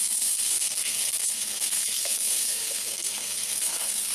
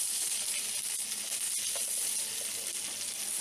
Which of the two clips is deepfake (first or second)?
first